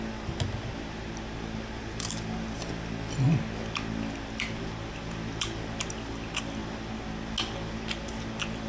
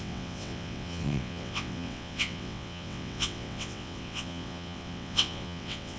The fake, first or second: second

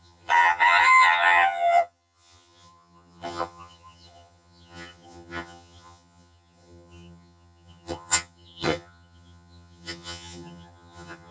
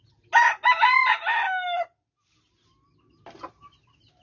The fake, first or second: first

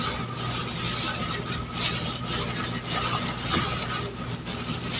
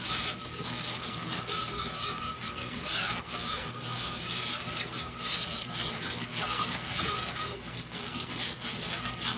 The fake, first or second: second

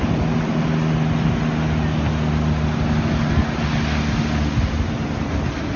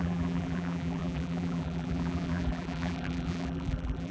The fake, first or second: second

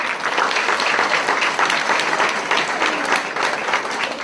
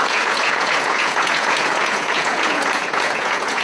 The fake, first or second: second